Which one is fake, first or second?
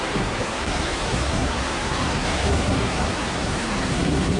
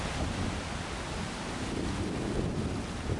first